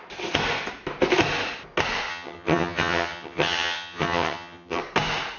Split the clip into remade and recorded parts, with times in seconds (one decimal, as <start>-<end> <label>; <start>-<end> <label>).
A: 0.0-2.1 recorded; 2.1-4.8 remade; 4.8-5.4 recorded